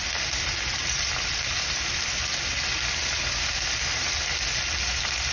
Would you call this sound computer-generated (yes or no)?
no